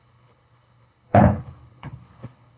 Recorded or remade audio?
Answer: remade